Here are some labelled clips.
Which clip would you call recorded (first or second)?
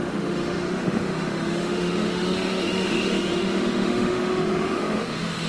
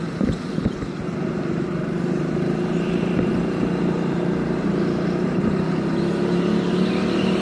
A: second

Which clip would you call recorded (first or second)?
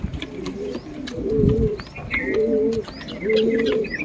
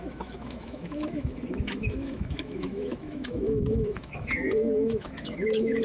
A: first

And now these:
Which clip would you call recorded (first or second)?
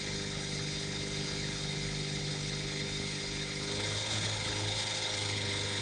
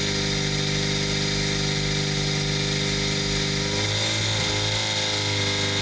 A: second